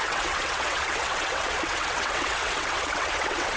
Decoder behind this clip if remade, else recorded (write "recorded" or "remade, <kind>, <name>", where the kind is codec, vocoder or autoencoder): remade, vocoder, WaveNeXt